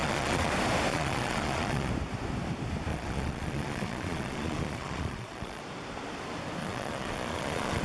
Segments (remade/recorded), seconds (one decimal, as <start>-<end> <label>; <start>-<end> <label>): 0.0-0.5 remade; 0.5-0.9 recorded; 0.9-1.9 remade; 1.9-2.9 recorded; 2.9-5.6 remade; 5.6-6.6 recorded; 6.6-7.8 remade